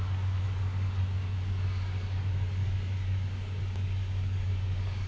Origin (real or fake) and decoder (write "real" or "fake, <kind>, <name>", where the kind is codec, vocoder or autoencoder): fake, codec, DAC